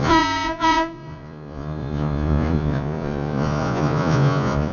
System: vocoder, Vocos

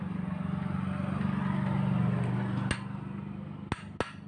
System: none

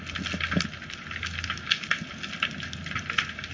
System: none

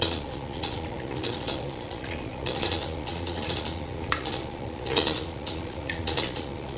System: vocoder, Vocos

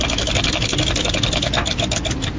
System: none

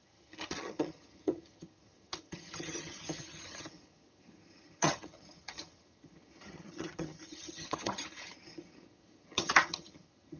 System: vocoder, HiFi-GAN